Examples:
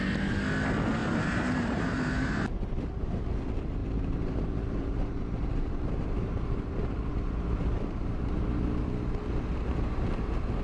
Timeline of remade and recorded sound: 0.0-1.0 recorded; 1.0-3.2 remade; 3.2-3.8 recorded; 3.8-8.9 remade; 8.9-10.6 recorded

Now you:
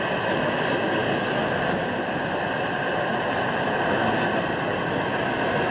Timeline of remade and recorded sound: 0.0-5.7 recorded

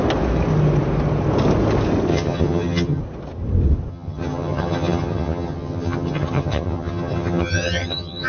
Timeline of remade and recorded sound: 0.0-2.1 recorded; 2.1-3.0 remade; 3.0-3.9 recorded; 3.9-8.3 remade

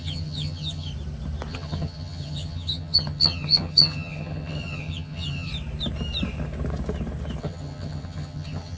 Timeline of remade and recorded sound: 0.0-0.9 remade; 0.9-1.5 recorded; 1.5-5.5 remade; 5.5-7.4 recorded; 7.4-8.8 remade

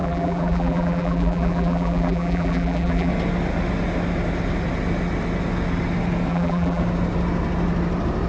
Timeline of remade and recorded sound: 0.0-3.1 remade; 3.1-6.3 recorded; 6.3-6.8 remade; 6.8-8.3 recorded

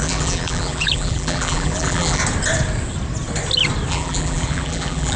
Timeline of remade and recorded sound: 0.0-2.2 remade; 2.2-3.9 recorded; 3.9-5.2 remade